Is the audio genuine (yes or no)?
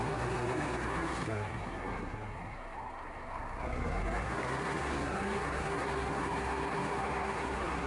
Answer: no